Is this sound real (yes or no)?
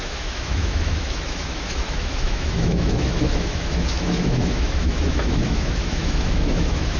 no